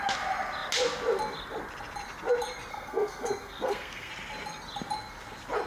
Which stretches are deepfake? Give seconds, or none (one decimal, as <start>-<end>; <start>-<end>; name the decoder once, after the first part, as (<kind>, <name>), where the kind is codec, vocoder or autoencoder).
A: 2.7-4.1 (codec, SNAC)